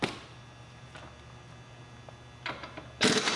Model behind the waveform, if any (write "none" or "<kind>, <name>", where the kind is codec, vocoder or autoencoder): none